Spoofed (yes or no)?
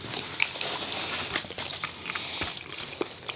no